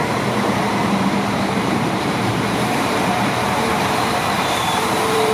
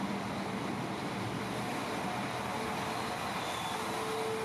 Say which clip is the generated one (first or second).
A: first